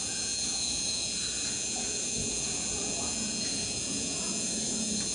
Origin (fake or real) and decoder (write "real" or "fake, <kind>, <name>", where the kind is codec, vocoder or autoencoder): fake, vocoder, BigVGAN v2